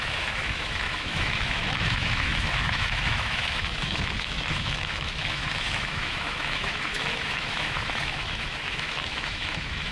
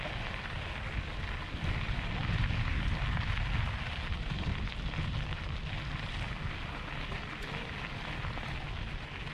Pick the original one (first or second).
second